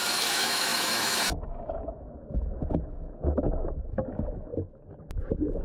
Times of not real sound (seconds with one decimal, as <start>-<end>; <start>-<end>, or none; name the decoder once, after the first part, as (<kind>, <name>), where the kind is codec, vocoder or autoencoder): 0.0-4.5 (autoencoder, DAC-VAE)